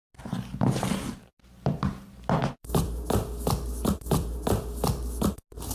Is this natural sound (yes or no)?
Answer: yes